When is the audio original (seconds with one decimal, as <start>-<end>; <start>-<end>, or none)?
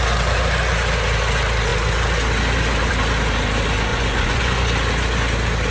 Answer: 0.0-3.9; 4.7-5.7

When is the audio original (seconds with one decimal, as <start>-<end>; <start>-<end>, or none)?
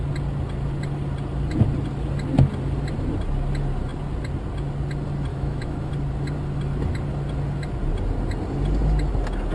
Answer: 0.0-5.3; 5.9-9.5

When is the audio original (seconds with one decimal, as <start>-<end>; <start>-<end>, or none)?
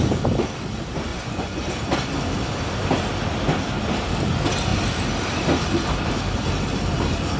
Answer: 0.0-1.1; 1.6-7.4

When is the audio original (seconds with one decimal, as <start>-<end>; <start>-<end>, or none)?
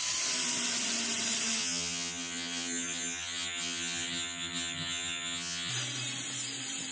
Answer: 0.0-1.6; 5.7-6.9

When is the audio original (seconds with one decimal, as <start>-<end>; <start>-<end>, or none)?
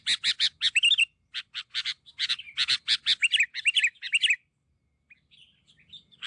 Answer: 0.0-6.3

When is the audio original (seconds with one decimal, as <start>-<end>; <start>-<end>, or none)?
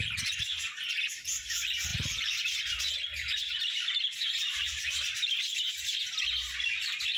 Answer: 0.0-7.2